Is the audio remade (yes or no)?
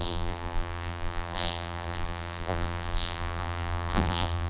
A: yes